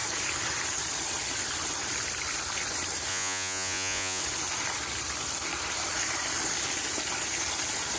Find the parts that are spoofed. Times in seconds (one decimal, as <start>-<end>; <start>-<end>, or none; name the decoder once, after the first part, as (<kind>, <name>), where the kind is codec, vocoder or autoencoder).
3.1-4.2 (vocoder, Vocos)